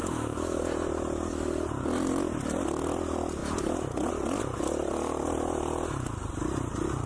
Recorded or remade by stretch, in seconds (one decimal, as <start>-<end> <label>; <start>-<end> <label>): 0.0-0.6 remade; 0.6-7.1 recorded